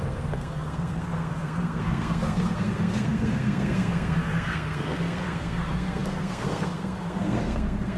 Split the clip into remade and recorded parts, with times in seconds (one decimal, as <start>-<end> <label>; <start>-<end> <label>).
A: 0.0-8.0 remade